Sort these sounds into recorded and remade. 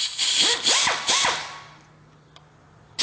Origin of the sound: recorded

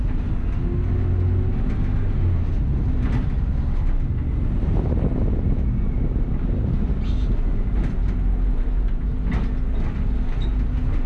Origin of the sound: recorded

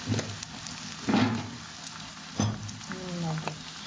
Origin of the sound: recorded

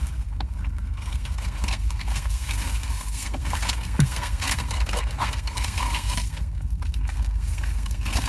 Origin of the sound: remade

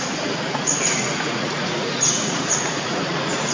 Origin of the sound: remade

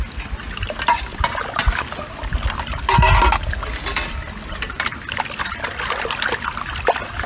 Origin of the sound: recorded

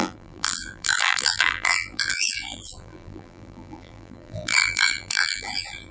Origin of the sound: remade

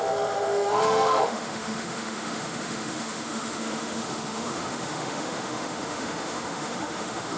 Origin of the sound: remade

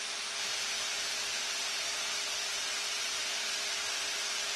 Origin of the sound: recorded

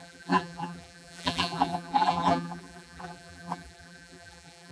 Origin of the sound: remade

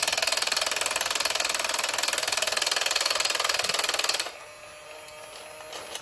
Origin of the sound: recorded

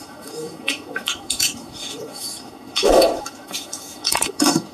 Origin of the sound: remade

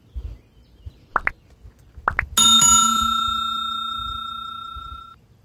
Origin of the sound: recorded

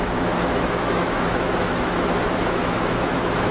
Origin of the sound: remade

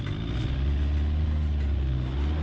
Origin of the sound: recorded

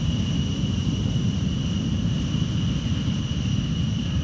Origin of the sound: recorded